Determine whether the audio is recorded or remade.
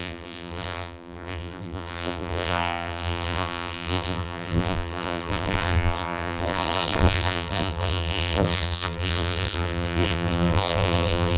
remade